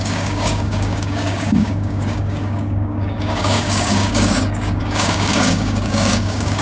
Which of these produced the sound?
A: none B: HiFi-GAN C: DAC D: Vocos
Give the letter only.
C